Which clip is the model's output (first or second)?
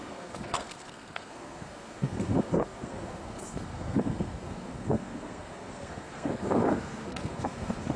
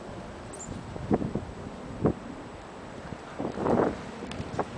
first